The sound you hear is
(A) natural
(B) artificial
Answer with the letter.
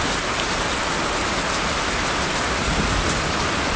B